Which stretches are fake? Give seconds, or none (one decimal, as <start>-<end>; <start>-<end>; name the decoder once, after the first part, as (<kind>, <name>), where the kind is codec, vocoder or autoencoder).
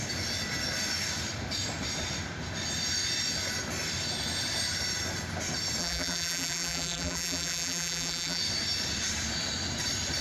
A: 5.8-8.4 (vocoder, BigVGAN v2)